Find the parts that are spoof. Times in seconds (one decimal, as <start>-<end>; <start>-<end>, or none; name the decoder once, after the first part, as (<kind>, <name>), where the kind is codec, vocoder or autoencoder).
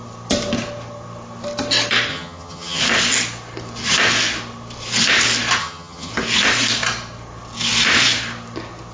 2.1-2.8 (vocoder, HiFi-GAN); 5.6-6.1